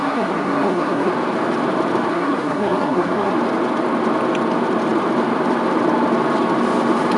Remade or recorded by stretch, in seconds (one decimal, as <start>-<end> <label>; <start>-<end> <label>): 0.0-1.1 remade; 1.1-2.1 recorded; 2.1-3.3 remade; 3.3-7.2 recorded

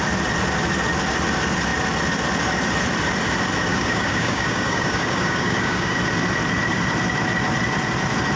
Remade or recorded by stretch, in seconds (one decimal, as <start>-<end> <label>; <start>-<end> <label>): 0.0-3.7 recorded; 3.7-6.0 remade; 6.0-8.4 recorded

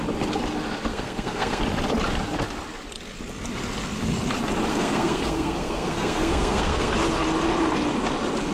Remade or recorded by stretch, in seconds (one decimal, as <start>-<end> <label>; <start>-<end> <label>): 0.0-0.9 recorded; 0.9-1.6 remade; 1.6-4.7 recorded; 4.7-6.9 remade; 6.9-8.5 recorded